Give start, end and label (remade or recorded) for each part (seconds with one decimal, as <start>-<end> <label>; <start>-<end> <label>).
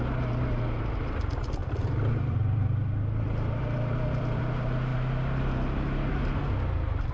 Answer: 0.0-1.6 recorded; 1.6-4.4 remade; 4.4-7.1 recorded